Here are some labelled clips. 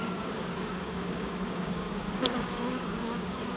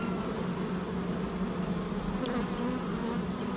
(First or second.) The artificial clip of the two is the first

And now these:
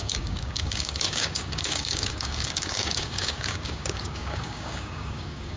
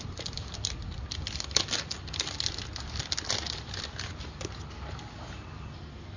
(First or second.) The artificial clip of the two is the first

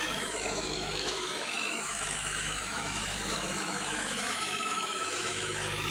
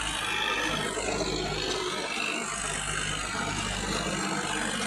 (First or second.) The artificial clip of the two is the first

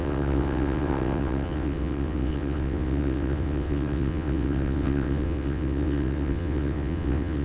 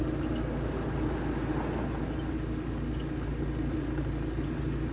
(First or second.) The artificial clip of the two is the first